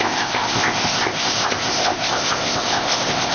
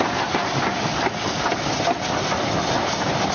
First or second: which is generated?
first